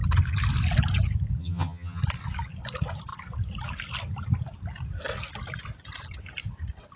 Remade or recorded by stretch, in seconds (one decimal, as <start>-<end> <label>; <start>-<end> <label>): 0.0-1.4 recorded; 1.4-2.0 remade; 2.0-7.0 recorded